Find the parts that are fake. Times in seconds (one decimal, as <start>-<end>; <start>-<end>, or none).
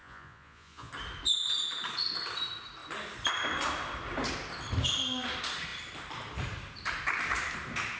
0.0-0.9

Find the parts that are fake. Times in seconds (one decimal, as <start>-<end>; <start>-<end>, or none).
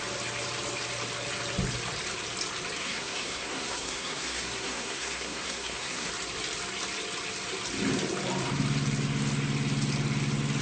2.8-6.1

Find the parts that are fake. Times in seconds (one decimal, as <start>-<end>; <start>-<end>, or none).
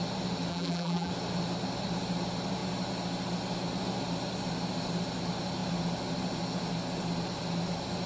0.5-1.1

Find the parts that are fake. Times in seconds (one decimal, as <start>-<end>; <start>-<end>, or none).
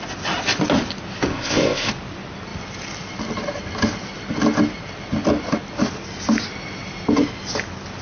1.3-1.9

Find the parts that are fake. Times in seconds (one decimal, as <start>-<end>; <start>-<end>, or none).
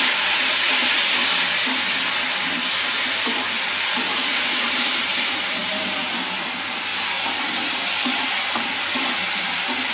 0.0-1.2; 2.4-6.9; 7.4-9.9